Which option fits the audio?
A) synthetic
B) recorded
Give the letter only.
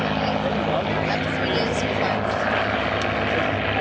B